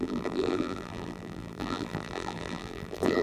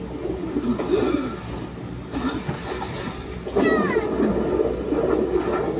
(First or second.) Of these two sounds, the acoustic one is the second